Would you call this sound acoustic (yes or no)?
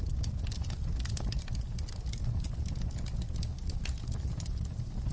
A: yes